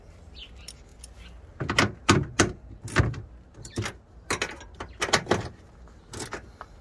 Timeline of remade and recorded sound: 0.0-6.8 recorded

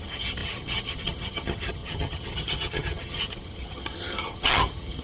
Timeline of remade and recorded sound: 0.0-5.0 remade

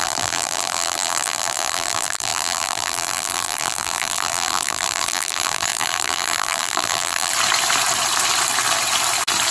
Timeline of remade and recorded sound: 0.0-7.3 remade; 7.3-9.5 recorded

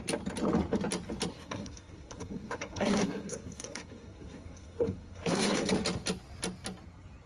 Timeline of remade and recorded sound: 0.0-1.3 recorded; 1.3-5.7 remade; 5.7-7.3 recorded

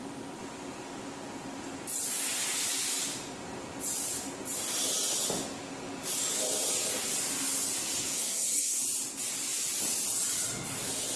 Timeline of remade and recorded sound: 0.0-8.0 recorded; 8.0-8.8 remade; 8.8-11.2 recorded

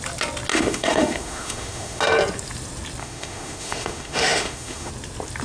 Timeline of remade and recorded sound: 0.0-0.5 recorded; 0.5-2.0 remade; 2.0-3.0 recorded; 3.0-4.9 remade; 4.9-5.4 recorded

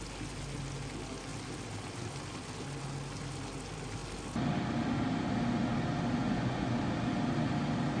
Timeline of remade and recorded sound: 0.0-6.2 recorded; 6.2-6.7 remade; 6.7-8.0 recorded

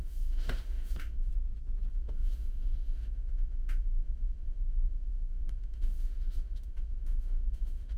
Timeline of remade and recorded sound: 0.0-1.3 remade; 1.3-1.9 recorded; 1.9-8.0 remade